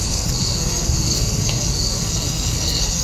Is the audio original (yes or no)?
no